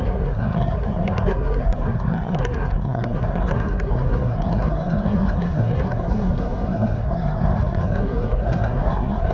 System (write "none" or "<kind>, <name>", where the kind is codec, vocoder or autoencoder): codec, SNAC